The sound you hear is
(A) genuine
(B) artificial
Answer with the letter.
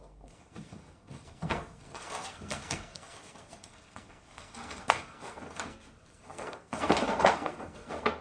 B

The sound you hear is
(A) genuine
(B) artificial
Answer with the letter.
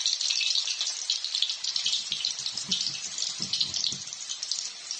A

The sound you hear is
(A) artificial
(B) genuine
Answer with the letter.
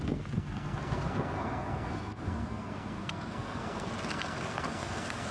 A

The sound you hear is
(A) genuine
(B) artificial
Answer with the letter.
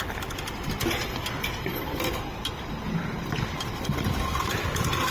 A